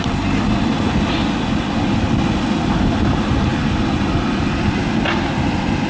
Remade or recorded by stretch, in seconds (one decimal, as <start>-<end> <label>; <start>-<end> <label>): 0.0-5.9 recorded